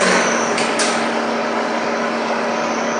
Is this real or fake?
fake